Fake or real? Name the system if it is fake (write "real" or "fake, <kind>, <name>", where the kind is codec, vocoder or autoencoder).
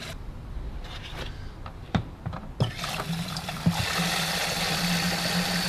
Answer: real